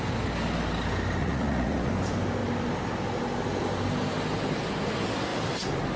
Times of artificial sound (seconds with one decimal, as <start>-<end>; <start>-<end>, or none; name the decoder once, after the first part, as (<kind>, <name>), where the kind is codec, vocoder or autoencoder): 1.2-1.9 (vocoder, Vocos)